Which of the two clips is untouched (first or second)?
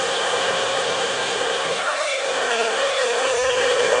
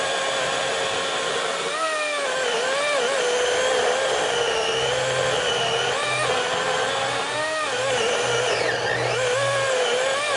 second